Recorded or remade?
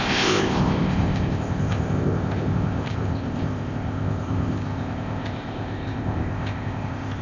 remade